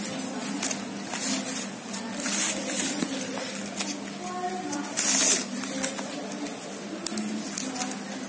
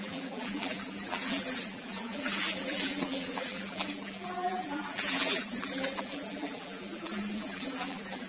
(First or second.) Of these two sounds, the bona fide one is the first